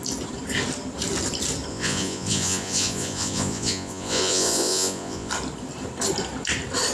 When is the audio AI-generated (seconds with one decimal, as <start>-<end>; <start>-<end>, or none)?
1.7-5.3